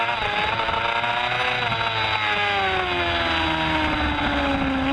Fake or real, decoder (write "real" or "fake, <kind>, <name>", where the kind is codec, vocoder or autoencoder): real